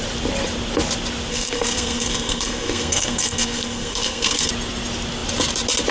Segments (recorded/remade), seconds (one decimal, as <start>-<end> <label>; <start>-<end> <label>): 0.0-1.3 recorded; 1.3-4.5 remade; 4.5-5.9 recorded